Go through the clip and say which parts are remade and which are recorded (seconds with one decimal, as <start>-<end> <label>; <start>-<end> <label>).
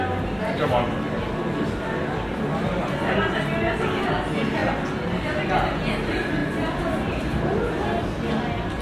0.0-6.4 recorded; 6.4-8.0 remade; 8.0-8.8 recorded